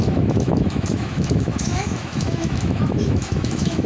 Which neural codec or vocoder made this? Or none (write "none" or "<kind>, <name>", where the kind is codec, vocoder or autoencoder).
autoencoder, DAC-VAE